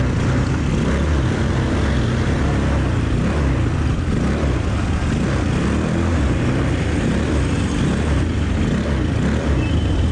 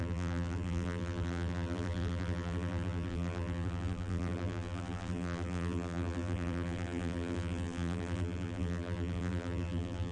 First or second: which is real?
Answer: first